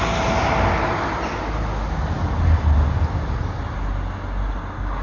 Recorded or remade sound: recorded